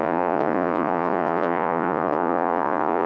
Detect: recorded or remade remade